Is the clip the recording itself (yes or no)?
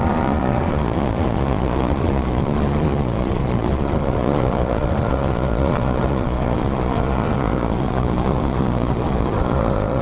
no